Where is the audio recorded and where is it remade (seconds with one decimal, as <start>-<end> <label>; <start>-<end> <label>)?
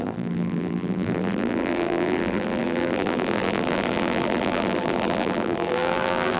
0.0-6.4 remade